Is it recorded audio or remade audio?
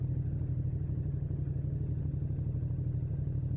recorded